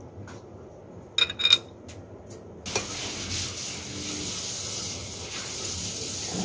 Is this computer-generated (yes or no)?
no